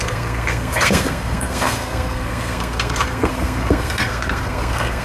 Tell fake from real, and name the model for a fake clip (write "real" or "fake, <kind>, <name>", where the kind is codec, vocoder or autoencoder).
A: fake, codec, SNAC